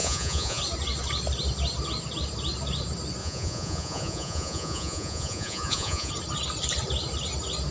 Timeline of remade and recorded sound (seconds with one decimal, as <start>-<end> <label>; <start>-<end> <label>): 0.0-0.6 remade; 0.6-3.2 recorded; 3.2-6.1 remade; 6.1-7.7 recorded